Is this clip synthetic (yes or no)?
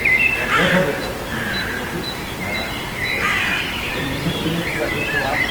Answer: yes